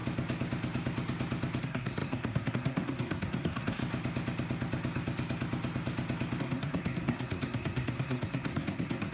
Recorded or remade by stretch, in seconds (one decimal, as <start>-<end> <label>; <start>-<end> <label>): 0.0-1.6 recorded; 1.6-3.8 remade; 3.8-6.4 recorded; 6.4-9.1 remade